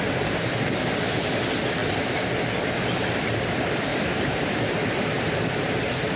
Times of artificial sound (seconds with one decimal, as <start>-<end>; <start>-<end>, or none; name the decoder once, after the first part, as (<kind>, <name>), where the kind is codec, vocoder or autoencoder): 3.9-5.0 (vocoder, BigVGAN v2)